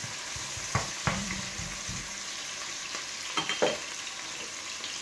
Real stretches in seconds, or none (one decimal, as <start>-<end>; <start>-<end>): 3.0-5.0